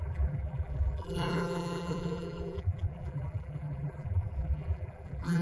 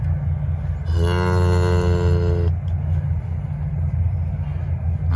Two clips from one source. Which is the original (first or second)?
second